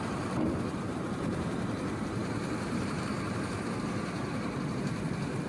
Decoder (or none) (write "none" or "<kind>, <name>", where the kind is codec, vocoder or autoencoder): vocoder, BigVGAN v2